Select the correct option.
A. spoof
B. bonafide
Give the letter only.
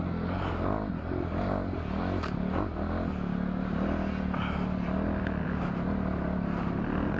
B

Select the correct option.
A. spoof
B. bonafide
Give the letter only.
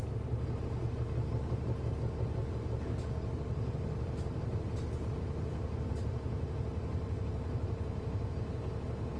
B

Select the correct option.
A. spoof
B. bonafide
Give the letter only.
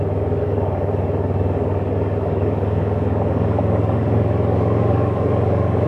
A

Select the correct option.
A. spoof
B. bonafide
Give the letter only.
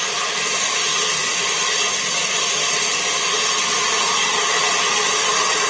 B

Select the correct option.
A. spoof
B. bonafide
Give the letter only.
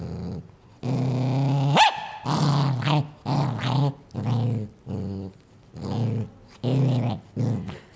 B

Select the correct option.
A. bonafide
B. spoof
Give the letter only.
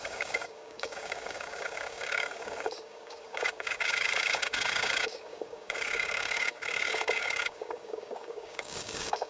B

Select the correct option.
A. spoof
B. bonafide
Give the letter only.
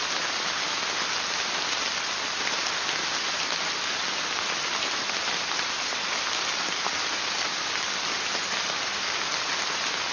B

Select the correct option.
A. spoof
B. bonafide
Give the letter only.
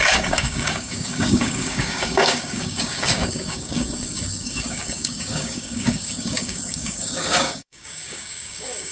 A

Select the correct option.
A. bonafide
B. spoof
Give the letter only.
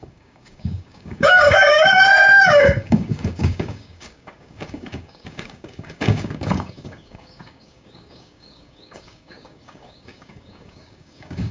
B